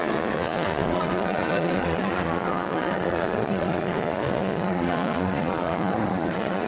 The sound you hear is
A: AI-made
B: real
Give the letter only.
A